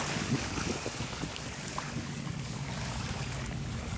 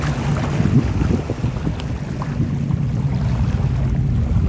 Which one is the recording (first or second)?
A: second